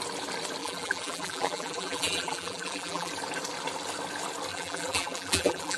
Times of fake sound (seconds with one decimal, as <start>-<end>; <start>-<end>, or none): 0.6-3.1; 4.5-5.8